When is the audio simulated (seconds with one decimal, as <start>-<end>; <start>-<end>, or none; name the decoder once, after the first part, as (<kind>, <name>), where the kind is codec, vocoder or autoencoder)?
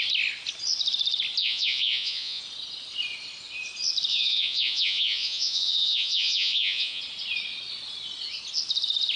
1.4-2.4 (vocoder, Vocos); 4.1-7.0